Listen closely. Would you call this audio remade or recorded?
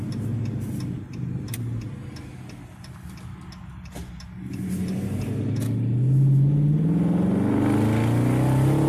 recorded